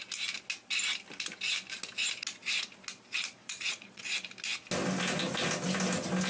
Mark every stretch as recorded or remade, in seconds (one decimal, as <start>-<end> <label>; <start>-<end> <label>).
0.0-3.4 recorded; 3.4-4.0 remade; 4.0-6.3 recorded